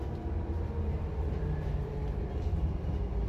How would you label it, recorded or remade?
recorded